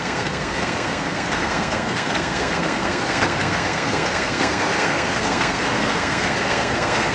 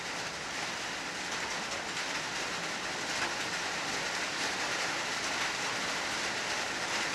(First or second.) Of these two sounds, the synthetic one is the first